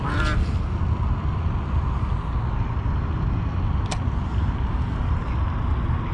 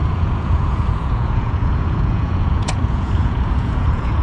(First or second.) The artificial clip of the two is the second